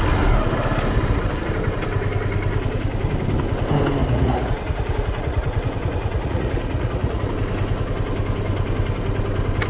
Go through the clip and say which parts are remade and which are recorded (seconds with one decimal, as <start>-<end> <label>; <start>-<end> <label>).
0.0-4.0 recorded; 4.0-7.3 remade; 7.3-9.7 recorded